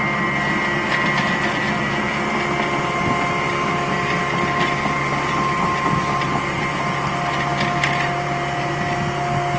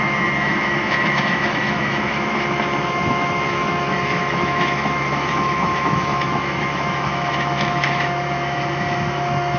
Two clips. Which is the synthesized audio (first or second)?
second